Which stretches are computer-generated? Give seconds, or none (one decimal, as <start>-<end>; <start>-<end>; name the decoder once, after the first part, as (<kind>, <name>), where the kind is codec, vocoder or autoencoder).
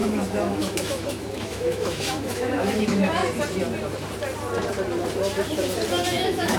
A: 0.0-3.2 (autoencoder, DAC-VAE); 5.9-6.6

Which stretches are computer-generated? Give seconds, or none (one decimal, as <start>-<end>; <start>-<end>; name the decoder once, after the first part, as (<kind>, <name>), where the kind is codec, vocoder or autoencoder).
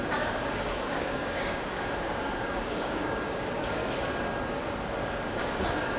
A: 0.0-3.8 (codec, DAC); 5.0-6.0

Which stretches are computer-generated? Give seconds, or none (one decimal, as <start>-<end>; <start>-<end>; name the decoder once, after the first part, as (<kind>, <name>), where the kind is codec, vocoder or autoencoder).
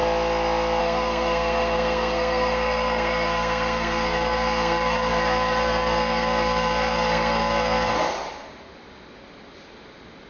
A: 0.8-7.9 (codec, SNAC)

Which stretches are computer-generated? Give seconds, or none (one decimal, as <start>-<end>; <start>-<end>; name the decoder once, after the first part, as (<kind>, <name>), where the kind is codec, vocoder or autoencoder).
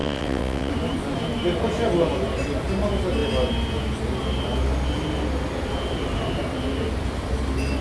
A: 0.0-0.7 (vocoder, WaveNeXt)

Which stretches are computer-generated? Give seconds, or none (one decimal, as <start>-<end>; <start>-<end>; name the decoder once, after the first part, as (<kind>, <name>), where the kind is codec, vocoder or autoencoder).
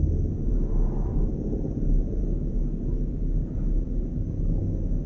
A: 2.2-3.5 (codec, DAC); 4.1-4.6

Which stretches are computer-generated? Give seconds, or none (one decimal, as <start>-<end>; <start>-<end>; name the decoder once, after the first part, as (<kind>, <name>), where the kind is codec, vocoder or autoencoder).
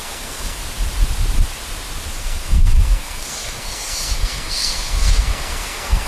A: 0.0-0.6 (codec, SNAC); 2.2-6.1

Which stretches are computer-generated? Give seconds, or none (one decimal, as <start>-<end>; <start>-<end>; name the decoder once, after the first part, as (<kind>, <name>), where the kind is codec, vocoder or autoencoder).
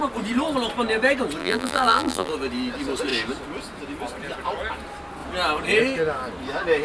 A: 1.4-2.3 (vocoder, BigVGAN v2)